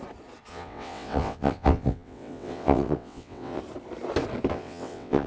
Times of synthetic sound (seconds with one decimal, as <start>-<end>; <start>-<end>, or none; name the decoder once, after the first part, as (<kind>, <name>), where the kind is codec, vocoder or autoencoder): 0.5-3.6 (vocoder, WaveNeXt); 4.5-5.3